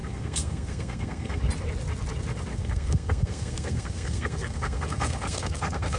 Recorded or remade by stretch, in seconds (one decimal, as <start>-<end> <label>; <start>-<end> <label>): 0.0-1.4 remade; 1.4-2.5 recorded; 2.5-6.0 remade